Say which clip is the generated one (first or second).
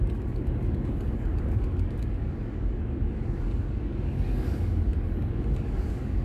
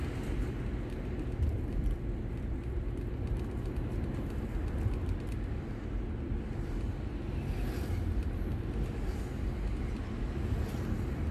first